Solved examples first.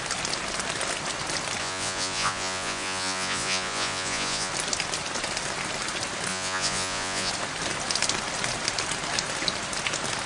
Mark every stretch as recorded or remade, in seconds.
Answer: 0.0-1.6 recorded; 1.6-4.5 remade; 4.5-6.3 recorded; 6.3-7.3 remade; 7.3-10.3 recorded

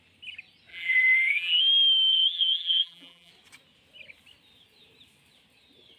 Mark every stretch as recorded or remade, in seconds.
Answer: 0.0-0.7 recorded; 0.7-1.6 remade; 1.6-2.1 recorded; 2.1-3.3 remade; 3.3-6.0 recorded

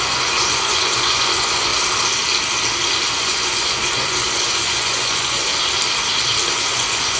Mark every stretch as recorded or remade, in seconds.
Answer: 0.0-1.7 remade; 1.7-3.1 recorded; 3.1-5.5 remade; 5.5-6.5 recorded; 6.5-7.2 remade